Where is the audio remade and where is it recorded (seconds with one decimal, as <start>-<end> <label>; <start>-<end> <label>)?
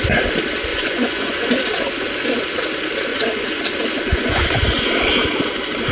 0.0-0.7 recorded; 0.7-1.5 remade; 1.5-3.1 recorded; 3.1-3.6 remade; 3.6-4.1 recorded; 4.1-4.9 remade; 4.9-5.9 recorded